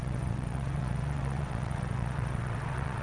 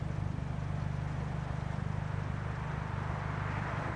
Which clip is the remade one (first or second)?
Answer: first